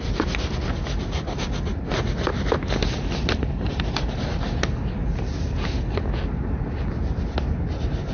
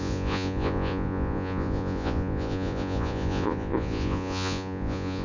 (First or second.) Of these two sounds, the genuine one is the first